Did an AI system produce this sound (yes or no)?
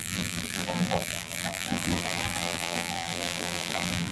yes